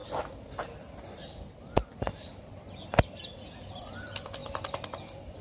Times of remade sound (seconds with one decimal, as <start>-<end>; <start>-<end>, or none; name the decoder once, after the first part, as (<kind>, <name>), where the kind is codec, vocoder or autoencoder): none